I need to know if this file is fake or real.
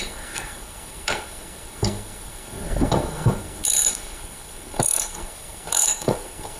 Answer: fake